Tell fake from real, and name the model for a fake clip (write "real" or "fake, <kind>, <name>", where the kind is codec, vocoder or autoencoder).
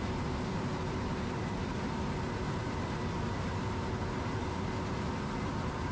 fake, vocoder, BigVGAN v2